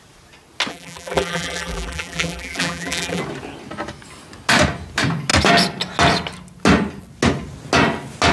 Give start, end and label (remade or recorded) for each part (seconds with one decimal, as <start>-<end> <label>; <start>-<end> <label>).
0.0-0.7 recorded; 0.7-3.2 remade; 3.2-8.3 recorded